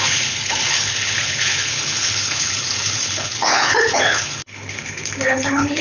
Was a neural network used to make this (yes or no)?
yes